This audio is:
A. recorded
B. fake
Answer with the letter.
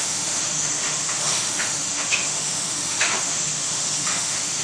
B